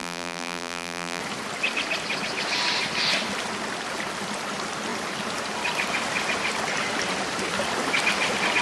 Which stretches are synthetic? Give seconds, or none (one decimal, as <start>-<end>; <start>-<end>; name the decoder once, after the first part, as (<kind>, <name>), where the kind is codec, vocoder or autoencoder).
0.0-1.2 (vocoder, BigVGAN v2)